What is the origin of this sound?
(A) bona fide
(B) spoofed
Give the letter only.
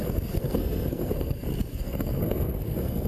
B